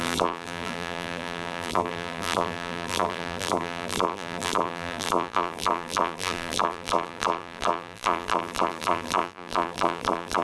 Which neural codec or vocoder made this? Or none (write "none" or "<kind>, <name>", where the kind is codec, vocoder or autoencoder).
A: vocoder, BigVGAN v2